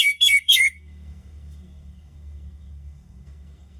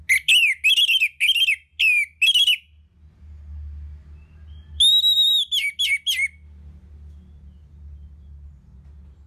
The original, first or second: second